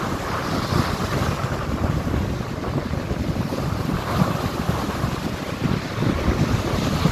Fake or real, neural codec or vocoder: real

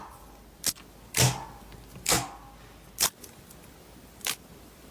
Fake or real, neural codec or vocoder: real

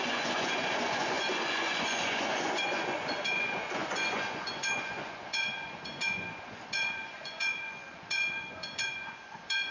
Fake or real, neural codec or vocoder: fake, vocoder, Vocos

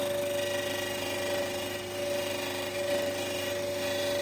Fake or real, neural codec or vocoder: real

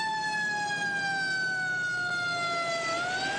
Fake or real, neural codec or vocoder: real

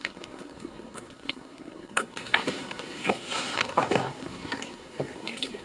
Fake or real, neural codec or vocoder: fake, codec, SNAC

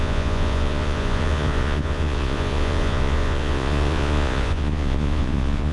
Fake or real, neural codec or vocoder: fake, vocoder, Vocos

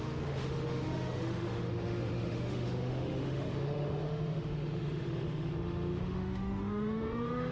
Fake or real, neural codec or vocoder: fake, autoencoder, DAC-VAE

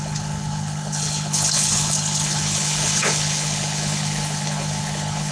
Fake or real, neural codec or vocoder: fake, codec, HILCodec